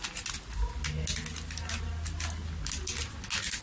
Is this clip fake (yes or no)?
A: no